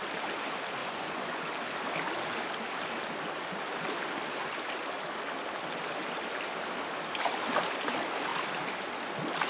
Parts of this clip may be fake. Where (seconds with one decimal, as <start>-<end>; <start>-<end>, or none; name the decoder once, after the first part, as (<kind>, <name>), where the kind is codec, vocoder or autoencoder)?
0.8-1.4 (vocoder, Vocos)